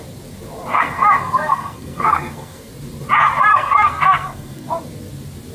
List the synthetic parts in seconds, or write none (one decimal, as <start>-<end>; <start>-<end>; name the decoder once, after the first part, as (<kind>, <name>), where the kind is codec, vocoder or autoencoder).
0.7-2.7 (codec, SNAC); 3.5-4.7